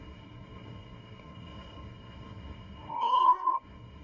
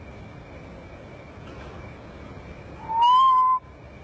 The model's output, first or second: first